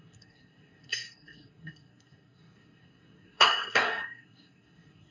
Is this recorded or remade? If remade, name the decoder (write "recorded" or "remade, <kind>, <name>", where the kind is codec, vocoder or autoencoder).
remade, codec, SNAC